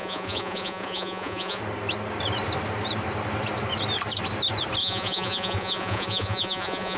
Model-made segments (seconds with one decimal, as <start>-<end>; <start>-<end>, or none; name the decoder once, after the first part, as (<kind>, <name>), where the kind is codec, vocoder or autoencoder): 0.0-1.6 (vocoder, Vocos); 4.8-7.0